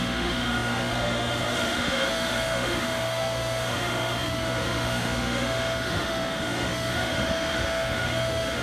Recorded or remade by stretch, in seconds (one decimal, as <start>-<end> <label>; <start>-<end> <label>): 0.0-8.6 remade